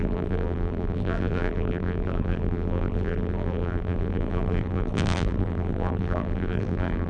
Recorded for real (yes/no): no